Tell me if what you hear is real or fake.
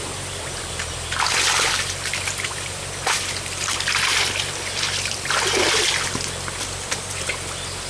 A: fake